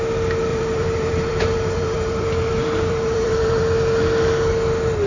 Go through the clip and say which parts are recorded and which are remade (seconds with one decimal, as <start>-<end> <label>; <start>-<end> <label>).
0.0-0.5 recorded; 0.5-3.6 remade; 3.6-5.1 recorded